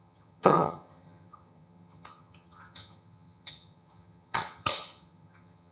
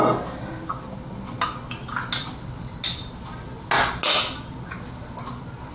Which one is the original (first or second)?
second